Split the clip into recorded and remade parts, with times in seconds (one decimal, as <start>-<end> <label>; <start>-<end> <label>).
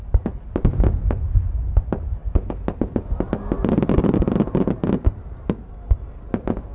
0.0-6.7 recorded